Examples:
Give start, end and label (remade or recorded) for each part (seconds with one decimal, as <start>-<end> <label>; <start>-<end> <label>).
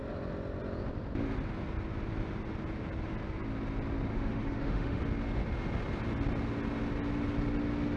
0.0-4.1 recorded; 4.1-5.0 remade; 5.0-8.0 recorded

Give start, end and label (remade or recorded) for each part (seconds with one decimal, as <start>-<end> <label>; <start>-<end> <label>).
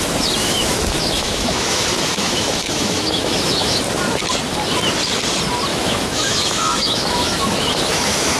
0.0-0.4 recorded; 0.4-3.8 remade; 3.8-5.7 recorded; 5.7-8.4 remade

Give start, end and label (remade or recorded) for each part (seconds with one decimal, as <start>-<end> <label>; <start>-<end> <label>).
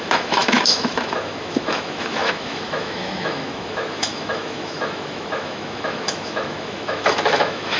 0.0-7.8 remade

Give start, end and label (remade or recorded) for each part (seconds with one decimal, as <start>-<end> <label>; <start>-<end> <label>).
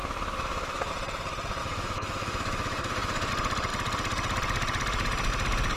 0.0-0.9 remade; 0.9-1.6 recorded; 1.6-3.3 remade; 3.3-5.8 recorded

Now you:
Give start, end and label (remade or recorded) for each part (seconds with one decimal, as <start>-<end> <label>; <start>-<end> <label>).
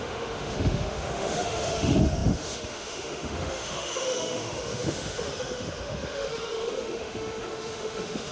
0.0-8.3 remade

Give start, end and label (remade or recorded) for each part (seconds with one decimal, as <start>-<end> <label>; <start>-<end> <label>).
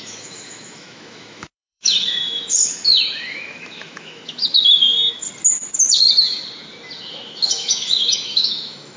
0.0-4.9 remade; 4.9-7.1 recorded; 7.1-9.0 remade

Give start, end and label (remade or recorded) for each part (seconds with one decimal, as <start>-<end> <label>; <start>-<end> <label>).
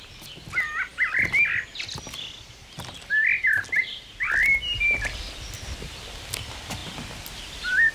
0.0-7.9 recorded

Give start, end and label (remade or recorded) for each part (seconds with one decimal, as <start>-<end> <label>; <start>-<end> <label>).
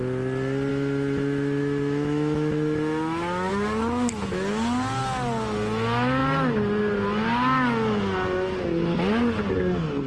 0.0-0.7 recorded; 0.7-3.5 remade; 3.5-10.1 recorded